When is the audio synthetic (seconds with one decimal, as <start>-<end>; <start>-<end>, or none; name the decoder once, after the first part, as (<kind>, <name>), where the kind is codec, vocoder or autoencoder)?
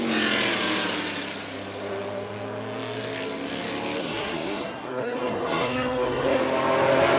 4.0-6.4 (codec, SNAC)